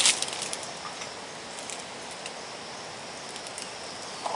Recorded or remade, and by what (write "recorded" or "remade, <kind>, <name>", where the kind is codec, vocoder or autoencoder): recorded